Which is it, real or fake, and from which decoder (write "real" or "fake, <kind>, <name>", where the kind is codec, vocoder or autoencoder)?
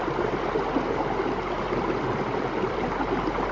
real